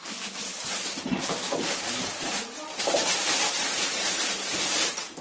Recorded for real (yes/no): no